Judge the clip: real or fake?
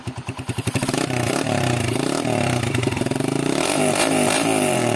fake